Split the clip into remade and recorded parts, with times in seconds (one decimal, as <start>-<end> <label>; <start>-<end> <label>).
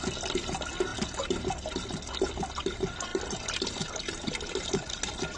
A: 0.0-5.4 recorded